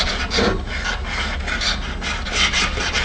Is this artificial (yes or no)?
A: no